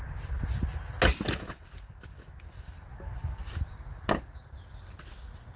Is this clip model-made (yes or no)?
no